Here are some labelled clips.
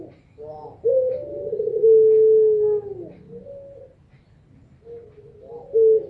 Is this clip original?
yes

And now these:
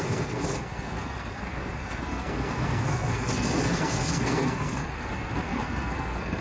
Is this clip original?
no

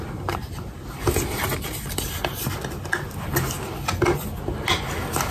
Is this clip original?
yes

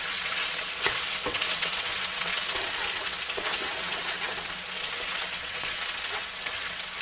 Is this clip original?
no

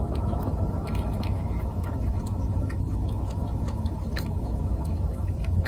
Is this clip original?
no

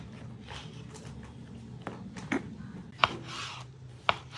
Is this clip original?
yes